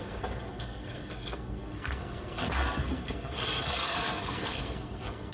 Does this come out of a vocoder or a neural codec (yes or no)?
yes